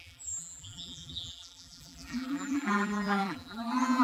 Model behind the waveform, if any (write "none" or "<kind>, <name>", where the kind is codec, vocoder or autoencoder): vocoder, BigVGAN v2